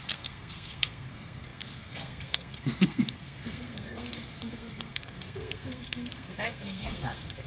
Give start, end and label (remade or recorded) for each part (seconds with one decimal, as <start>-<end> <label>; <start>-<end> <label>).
0.0-7.5 remade